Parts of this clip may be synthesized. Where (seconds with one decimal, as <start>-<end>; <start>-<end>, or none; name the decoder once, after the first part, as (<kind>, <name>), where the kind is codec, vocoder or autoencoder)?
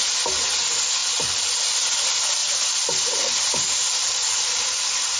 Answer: 1.0-1.6 (vocoder, BigVGAN v2); 2.4-4.1